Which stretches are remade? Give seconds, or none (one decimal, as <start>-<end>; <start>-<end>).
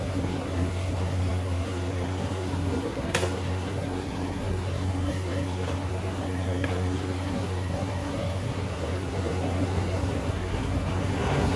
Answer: 0.0-11.6